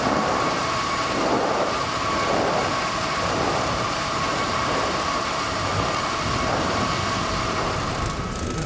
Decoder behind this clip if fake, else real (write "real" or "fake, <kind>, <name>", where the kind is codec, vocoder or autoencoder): fake, vocoder, BigVGAN v2